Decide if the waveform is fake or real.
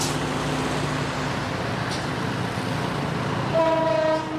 real